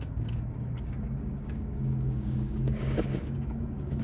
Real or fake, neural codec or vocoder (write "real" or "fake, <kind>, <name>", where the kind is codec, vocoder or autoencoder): fake, codec, DAC